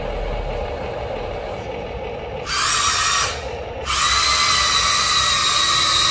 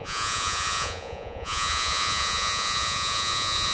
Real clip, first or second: first